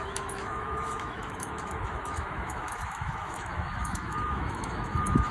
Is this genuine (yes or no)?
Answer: no